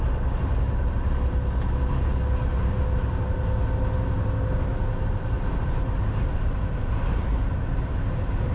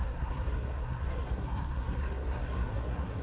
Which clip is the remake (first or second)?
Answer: second